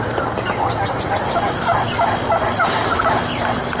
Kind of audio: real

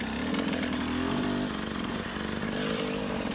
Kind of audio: real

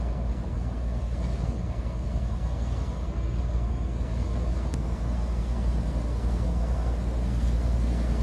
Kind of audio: fake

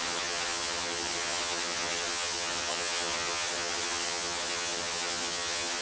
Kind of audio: fake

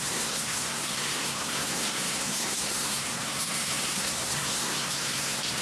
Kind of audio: fake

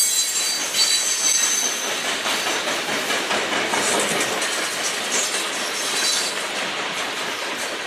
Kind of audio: real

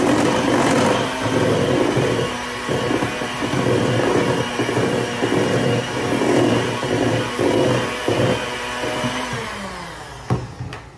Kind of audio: real